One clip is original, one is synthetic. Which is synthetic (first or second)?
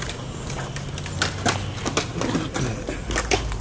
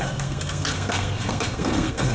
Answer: second